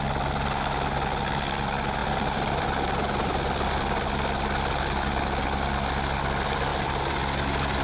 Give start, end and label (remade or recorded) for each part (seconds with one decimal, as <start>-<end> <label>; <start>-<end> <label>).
0.0-2.0 recorded; 2.0-4.1 remade; 4.1-6.7 recorded; 6.7-7.2 remade; 7.2-7.8 recorded